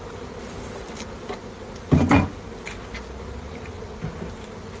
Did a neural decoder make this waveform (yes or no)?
no